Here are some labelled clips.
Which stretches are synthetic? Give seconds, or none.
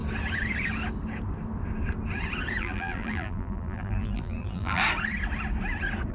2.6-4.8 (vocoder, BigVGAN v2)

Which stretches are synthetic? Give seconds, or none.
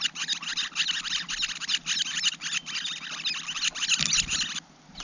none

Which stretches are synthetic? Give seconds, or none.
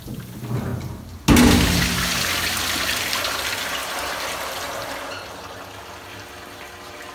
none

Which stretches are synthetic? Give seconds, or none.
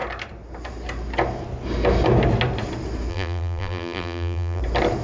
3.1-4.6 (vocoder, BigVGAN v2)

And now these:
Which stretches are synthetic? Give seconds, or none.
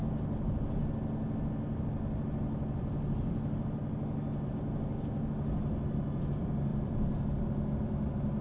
6.7-7.5 (vocoder, BigVGAN v2)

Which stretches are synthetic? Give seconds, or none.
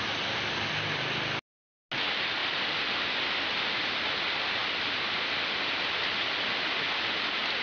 2.4-4.0 (vocoder, BigVGAN v2); 4.6-5.1